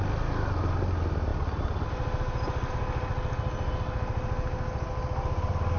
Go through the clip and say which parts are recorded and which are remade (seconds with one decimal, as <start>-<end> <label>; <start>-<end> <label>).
0.0-5.8 recorded